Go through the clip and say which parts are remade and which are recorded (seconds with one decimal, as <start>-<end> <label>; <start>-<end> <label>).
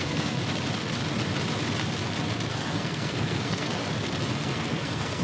0.0-0.4 remade; 0.4-2.5 recorded; 2.5-3.8 remade; 3.8-4.3 recorded; 4.3-5.2 remade